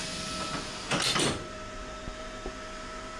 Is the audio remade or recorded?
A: recorded